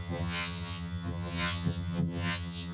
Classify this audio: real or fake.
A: fake